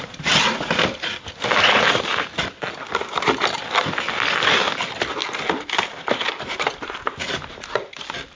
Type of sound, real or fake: real